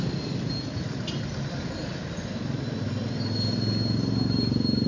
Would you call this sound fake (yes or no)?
no